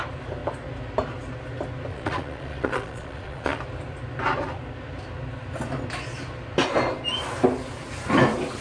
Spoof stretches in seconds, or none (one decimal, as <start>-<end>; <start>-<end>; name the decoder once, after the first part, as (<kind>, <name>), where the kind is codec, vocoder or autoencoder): 1.9-3.6 (vocoder, Vocos)